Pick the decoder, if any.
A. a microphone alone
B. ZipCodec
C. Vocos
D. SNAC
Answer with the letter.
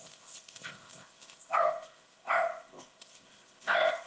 B